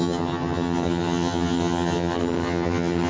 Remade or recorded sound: remade